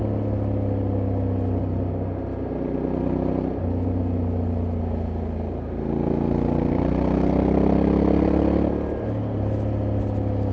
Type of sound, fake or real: real